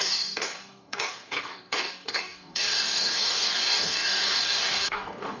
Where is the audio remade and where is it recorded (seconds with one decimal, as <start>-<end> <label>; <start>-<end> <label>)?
0.0-5.4 remade